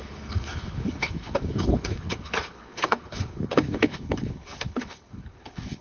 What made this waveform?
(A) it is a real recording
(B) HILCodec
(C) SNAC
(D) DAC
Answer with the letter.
B